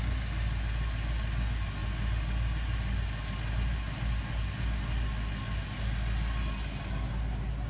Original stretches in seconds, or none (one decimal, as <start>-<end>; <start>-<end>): 0.0-7.7